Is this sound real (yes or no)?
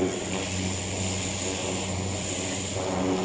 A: yes